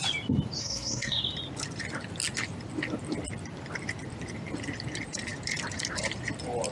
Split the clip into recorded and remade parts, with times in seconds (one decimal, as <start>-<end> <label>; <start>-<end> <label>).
0.0-0.6 recorded; 0.6-1.2 remade; 1.2-6.7 recorded